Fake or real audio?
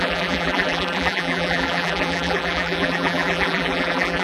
fake